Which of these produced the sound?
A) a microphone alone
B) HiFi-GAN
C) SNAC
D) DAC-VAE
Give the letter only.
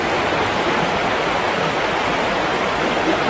A